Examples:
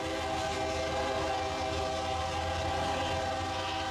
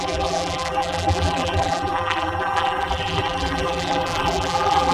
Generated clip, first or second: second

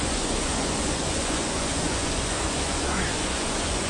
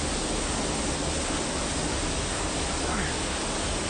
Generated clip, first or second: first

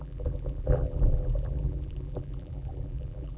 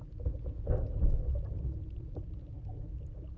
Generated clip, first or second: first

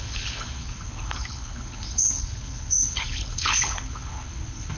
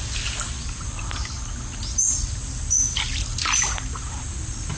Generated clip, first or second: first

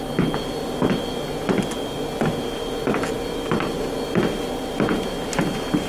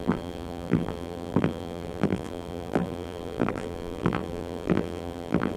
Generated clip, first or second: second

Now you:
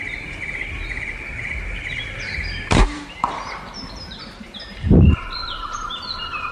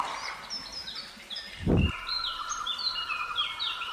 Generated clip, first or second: first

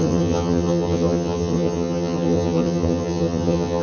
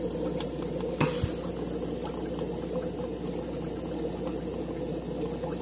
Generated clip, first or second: first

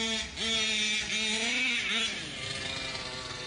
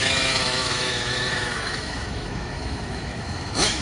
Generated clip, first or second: second